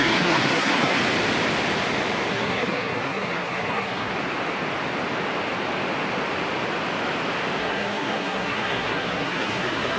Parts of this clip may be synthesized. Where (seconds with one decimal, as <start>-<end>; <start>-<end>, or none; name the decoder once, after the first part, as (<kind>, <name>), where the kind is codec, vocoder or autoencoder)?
0.0-1.0 (codec, SNAC); 2.3-4.1; 7.6-10.0